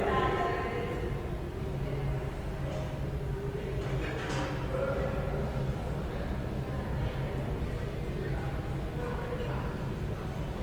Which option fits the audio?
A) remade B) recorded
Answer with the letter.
B